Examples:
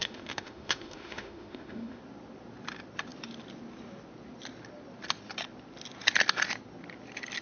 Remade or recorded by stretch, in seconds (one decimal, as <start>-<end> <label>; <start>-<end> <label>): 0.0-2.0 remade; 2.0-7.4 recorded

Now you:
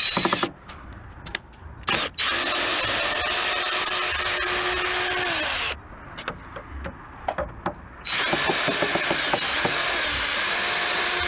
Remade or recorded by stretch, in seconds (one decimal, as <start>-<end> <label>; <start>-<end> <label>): 0.0-11.3 recorded

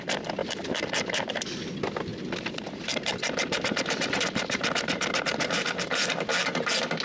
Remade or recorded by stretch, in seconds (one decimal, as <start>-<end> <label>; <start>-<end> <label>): 0.0-0.4 recorded; 0.4-1.7 remade; 1.7-2.1 recorded; 2.1-6.3 remade; 6.3-7.0 recorded